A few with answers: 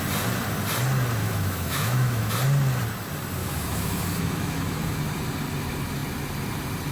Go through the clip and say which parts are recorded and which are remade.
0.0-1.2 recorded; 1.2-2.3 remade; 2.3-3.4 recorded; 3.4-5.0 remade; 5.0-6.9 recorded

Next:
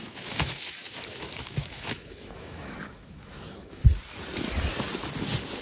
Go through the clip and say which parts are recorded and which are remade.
0.0-3.8 remade; 3.8-5.6 recorded

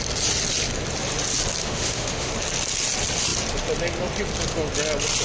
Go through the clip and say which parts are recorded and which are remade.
0.0-1.6 recorded; 1.6-2.3 remade; 2.3-5.2 recorded

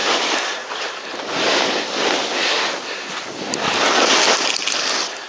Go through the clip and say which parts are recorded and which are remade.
0.0-2.0 remade; 2.0-5.3 recorded